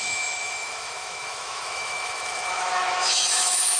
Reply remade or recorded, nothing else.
remade